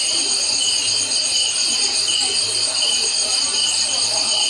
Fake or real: real